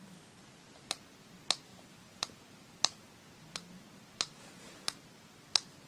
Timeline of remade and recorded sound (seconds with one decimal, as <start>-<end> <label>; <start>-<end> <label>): 0.0-1.7 recorded; 1.7-3.1 remade; 3.1-5.9 recorded